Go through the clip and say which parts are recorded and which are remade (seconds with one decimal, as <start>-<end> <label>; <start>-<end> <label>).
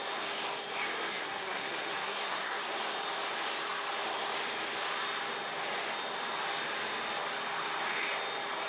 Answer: 0.0-1.1 recorded; 1.1-2.6 remade; 2.6-8.7 recorded